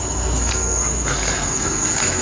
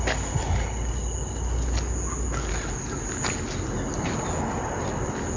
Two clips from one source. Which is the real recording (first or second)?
second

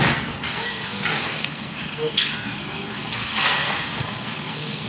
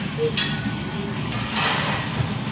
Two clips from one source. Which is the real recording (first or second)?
second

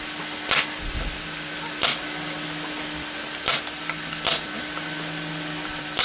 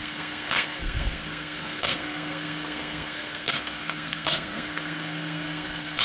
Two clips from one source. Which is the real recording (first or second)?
first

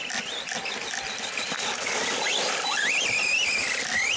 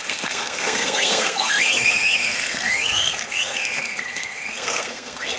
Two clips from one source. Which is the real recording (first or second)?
first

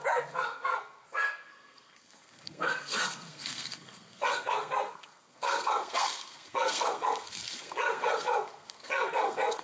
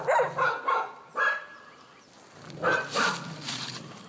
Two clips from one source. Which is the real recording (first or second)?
second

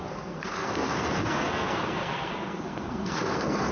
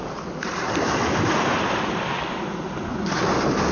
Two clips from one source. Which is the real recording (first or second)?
second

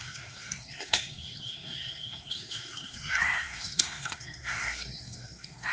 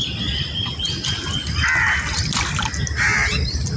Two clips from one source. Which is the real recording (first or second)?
second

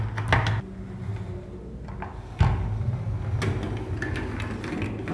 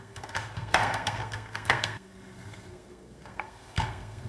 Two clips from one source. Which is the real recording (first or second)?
first